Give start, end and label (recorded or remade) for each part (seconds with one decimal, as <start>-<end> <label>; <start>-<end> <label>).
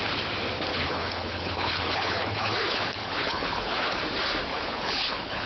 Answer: 0.0-0.7 recorded; 0.7-4.0 remade; 4.0-4.5 recorded; 4.5-5.5 remade